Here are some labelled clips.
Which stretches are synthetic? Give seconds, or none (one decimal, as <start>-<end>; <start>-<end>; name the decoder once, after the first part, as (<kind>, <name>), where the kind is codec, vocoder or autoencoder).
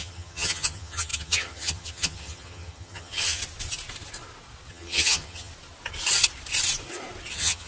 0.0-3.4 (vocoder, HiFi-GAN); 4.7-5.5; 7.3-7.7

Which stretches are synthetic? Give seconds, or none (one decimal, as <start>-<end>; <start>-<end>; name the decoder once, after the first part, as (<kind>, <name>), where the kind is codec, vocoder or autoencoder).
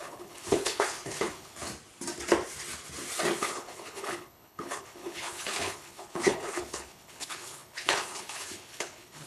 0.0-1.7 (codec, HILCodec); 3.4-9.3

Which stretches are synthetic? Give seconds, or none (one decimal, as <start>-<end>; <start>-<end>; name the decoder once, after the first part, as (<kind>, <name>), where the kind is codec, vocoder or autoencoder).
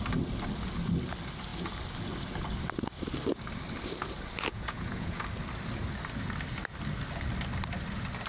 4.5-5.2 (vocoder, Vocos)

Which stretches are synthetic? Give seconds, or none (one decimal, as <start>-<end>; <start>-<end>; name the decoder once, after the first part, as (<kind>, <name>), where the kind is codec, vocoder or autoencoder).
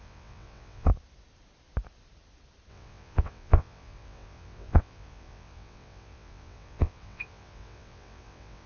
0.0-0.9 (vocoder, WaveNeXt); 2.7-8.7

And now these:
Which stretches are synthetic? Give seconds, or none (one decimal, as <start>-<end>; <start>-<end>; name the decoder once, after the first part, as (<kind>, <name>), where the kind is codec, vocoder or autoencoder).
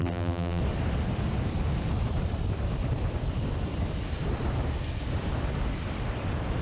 0.0-0.6 (vocoder, BigVGAN v2)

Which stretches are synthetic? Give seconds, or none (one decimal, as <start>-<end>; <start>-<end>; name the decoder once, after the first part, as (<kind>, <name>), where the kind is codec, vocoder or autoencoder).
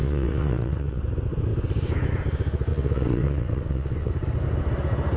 0.0-1.0 (vocoder, WaveNeXt); 2.7-4.1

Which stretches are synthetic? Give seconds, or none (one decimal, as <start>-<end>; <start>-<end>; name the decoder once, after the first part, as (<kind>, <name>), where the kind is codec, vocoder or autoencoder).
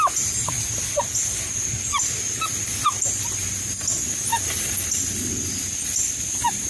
none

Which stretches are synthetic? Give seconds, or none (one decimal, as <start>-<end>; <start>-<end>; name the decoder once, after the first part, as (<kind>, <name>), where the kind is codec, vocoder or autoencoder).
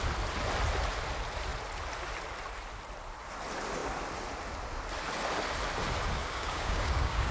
6.2-7.3 (codec, DAC)